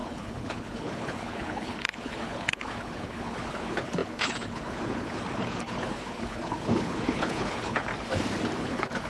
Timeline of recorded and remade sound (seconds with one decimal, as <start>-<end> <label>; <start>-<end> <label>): 0.0-7.9 remade; 7.9-8.6 recorded; 8.6-9.1 remade